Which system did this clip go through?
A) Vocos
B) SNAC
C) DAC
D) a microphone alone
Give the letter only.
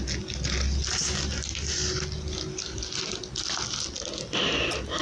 D